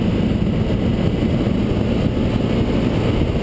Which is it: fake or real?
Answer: real